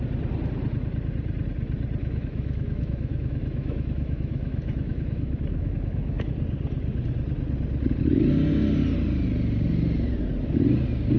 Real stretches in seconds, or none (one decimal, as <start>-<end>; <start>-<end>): 0.0-2.0; 6.3-11.2